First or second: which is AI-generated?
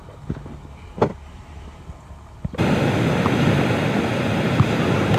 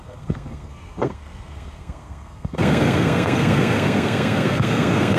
second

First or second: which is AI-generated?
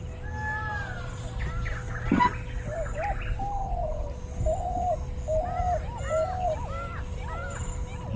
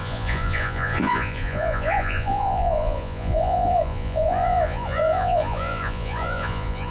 second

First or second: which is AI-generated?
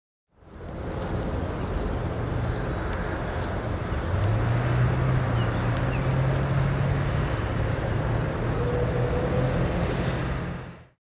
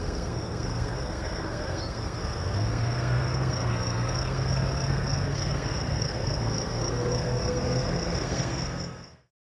second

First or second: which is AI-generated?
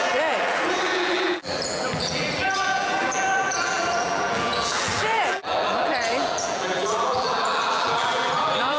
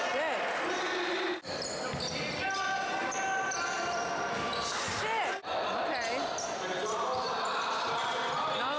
first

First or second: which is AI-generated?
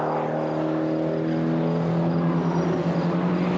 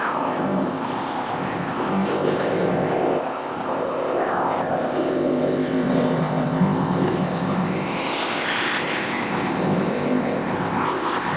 second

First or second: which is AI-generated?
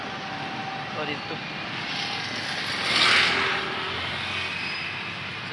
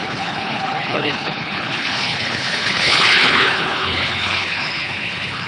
second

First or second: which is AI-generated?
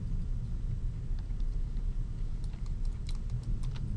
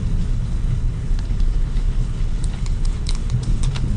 second